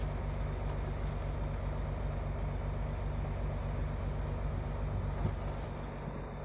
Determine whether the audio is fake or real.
real